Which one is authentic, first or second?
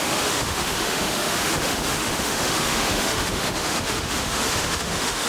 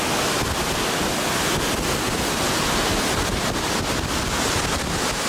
second